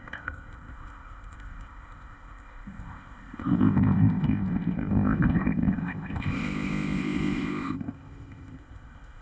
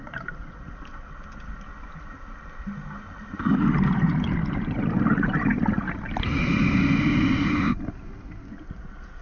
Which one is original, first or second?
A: second